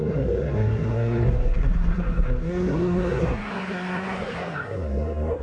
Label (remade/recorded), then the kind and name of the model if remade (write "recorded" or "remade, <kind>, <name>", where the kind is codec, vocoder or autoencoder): remade, codec, SNAC